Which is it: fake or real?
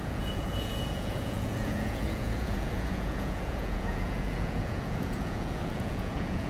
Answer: fake